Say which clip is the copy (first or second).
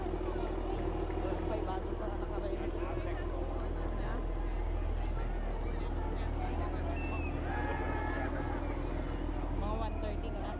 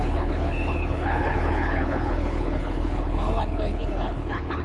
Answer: second